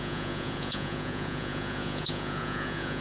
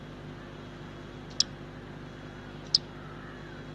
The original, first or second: second